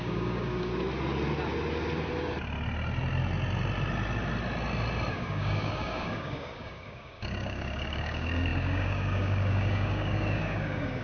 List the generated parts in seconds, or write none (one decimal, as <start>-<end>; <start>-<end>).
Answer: 0.0-0.7; 5.1-11.0